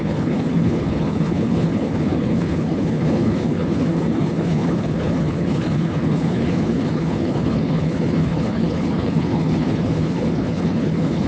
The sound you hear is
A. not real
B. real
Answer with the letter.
A